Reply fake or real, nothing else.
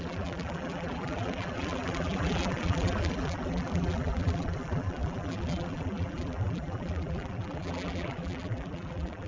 fake